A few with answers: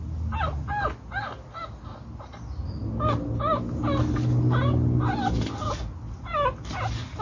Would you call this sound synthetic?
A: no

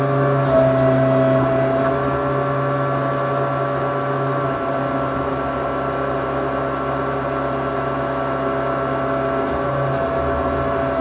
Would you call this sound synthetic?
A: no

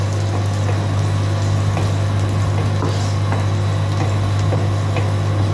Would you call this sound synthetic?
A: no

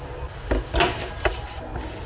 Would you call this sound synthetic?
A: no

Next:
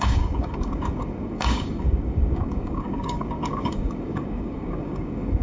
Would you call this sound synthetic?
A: yes